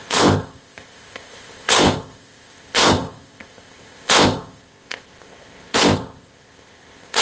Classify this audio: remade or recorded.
remade